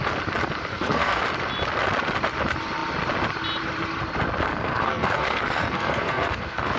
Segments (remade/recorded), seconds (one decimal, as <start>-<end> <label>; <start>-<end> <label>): 0.0-0.7 recorded; 0.7-1.2 remade; 1.2-4.5 recorded; 4.5-6.8 remade